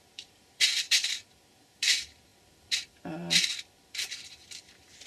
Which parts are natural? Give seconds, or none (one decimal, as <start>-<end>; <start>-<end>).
none